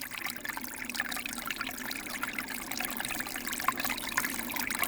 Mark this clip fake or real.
real